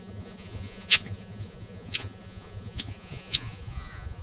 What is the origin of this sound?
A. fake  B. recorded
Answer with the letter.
A